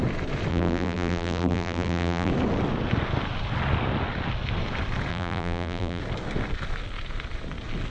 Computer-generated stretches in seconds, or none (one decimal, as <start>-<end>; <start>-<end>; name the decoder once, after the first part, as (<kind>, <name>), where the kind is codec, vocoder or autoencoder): 0.5-2.3 (vocoder, BigVGAN v2); 5.1-6.0